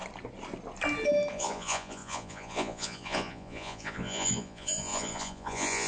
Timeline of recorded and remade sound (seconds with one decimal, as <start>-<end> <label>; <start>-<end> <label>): 0.0-1.3 recorded; 1.3-5.9 remade